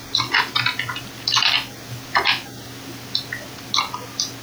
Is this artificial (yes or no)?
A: no